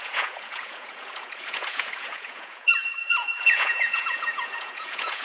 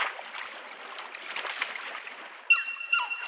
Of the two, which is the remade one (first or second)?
first